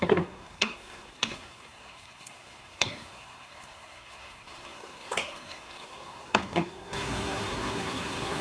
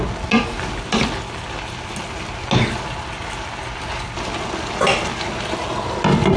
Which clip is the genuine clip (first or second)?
second